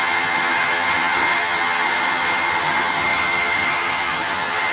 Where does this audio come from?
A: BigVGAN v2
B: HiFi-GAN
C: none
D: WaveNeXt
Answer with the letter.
B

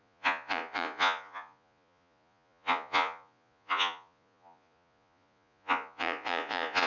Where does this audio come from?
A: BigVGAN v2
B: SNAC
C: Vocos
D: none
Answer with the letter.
C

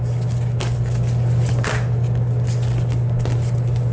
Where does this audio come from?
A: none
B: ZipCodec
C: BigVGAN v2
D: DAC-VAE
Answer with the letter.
A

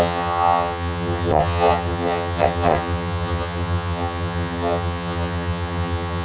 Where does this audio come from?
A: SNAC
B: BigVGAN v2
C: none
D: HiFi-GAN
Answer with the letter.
D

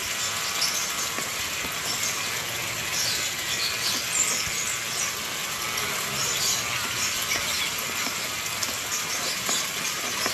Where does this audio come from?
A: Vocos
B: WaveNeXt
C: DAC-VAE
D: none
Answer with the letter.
D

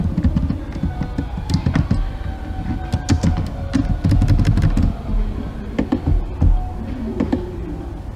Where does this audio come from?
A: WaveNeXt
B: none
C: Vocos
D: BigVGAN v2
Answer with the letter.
B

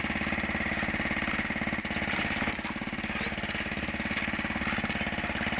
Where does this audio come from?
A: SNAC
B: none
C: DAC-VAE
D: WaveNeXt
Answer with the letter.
B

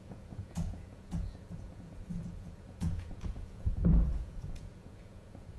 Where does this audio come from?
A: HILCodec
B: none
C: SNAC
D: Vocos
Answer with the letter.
D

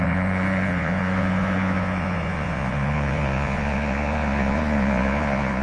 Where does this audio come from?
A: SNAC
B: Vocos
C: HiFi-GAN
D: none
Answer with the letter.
B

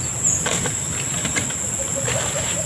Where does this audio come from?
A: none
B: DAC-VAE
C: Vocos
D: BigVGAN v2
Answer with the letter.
A